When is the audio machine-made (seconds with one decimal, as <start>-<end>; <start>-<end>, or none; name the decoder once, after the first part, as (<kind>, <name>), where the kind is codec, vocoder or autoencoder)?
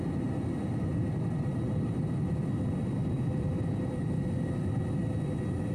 0.9-1.6 (vocoder, BigVGAN v2); 3.0-4.1